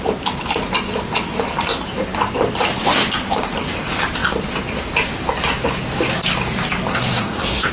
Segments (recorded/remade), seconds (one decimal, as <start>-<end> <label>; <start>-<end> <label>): 0.0-6.9 recorded; 6.9-7.7 remade